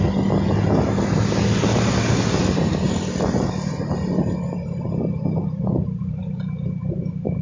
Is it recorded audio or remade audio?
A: recorded